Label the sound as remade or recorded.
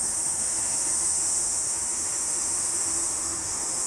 remade